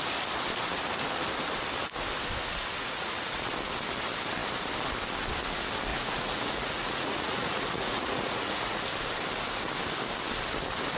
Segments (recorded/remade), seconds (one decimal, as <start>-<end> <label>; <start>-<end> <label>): 0.0-2.8 recorded; 2.8-3.5 remade; 3.5-5.9 recorded; 5.9-8.8 remade; 8.8-11.0 recorded